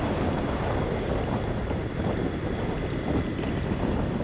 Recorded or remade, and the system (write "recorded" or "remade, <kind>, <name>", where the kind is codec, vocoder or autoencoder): recorded